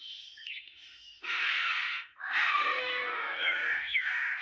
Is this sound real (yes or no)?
no